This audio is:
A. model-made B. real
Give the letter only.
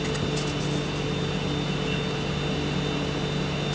B